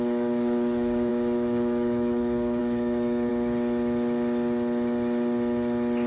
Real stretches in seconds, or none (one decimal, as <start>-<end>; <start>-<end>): 3.3-6.1